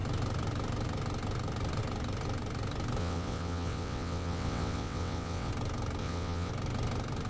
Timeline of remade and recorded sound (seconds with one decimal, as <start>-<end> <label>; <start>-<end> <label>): 0.0-3.0 recorded; 3.0-5.5 remade; 5.5-6.0 recorded; 6.0-6.5 remade; 6.5-7.3 recorded